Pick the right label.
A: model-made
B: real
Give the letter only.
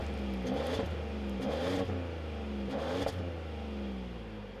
B